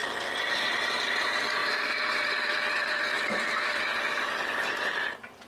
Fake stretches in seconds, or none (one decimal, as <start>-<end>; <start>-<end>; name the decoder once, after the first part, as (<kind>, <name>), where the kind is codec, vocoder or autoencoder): 0.5-5.5 (vocoder, BigVGAN v2)